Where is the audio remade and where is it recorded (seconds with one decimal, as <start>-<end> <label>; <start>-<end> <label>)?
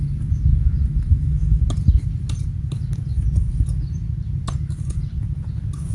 0.0-1.1 recorded; 1.1-1.6 remade; 1.6-5.9 recorded